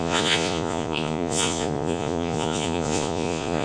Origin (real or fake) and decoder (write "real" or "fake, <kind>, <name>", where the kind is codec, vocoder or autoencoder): fake, vocoder, Vocos